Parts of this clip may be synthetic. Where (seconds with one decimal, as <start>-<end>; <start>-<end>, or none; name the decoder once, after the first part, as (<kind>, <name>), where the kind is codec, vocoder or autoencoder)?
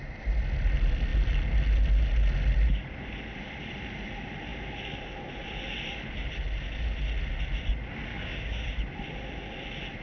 8.1-8.7 (codec, DAC)